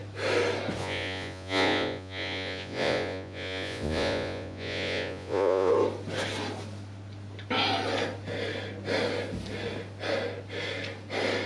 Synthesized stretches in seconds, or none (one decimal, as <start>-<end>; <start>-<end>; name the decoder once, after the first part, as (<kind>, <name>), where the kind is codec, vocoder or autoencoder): 0.8-5.7 (vocoder, Vocos)